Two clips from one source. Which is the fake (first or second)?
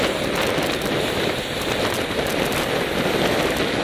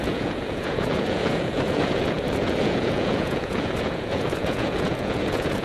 second